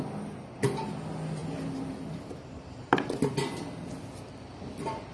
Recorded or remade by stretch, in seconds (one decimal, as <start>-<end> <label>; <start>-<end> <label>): 0.0-5.1 recorded